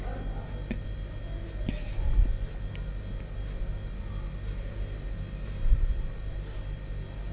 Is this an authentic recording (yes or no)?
yes